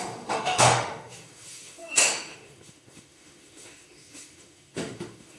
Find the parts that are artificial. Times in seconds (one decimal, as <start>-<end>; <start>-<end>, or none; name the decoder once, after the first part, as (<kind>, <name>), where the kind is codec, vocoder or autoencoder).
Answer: 0.0-5.4 (autoencoder, DAC-VAE)